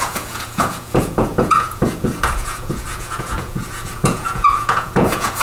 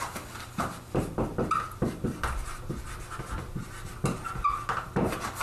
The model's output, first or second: first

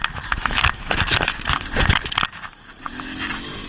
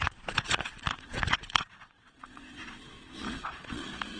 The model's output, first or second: second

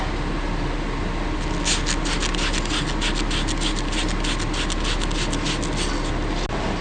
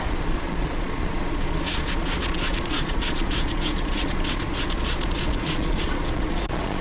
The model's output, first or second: second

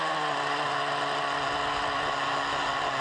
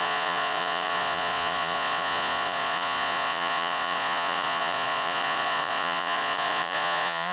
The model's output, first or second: second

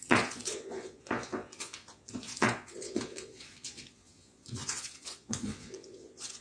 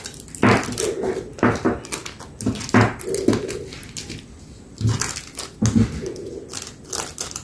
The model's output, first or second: first